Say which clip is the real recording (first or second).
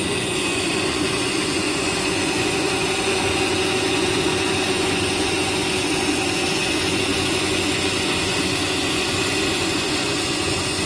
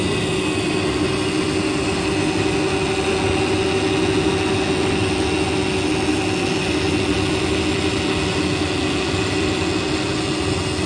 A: second